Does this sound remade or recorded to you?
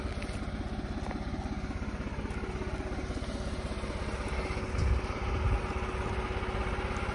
recorded